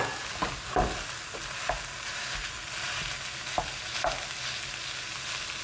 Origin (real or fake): real